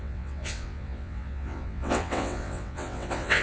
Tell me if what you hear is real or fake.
fake